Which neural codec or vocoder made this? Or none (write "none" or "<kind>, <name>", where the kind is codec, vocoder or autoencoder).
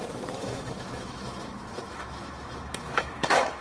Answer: autoencoder, DAC-VAE